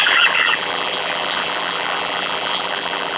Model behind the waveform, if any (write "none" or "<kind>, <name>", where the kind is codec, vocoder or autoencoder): vocoder, BigVGAN v2